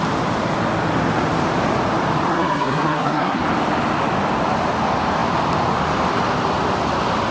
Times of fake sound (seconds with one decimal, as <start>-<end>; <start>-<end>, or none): 2.3-3.4